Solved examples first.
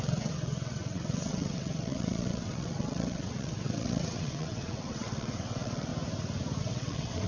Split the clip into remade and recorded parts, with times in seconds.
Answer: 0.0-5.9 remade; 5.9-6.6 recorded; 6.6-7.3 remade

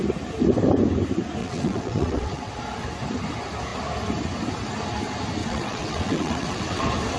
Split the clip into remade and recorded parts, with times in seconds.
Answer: 0.0-1.4 recorded; 1.4-2.5 remade; 2.5-5.4 recorded; 5.4-6.8 remade; 6.8-7.2 recorded

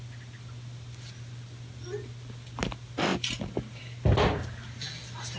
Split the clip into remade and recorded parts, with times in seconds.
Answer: 0.0-5.4 recorded